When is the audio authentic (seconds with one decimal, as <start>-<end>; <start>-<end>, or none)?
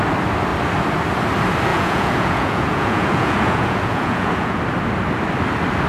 0.0-1.7; 4.6-5.9